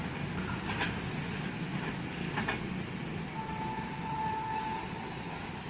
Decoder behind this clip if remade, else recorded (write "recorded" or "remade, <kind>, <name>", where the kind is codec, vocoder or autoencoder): recorded